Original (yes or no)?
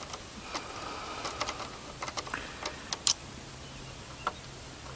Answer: yes